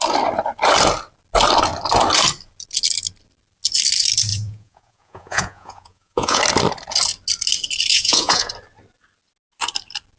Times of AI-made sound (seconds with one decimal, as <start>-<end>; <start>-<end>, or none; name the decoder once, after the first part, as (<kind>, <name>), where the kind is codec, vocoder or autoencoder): 4.3-6.4 (vocoder, Vocos); 7.9-8.5